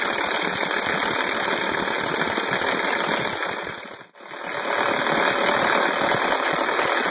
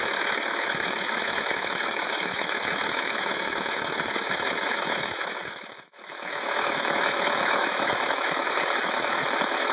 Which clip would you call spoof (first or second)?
second